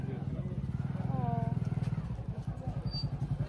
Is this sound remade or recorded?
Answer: recorded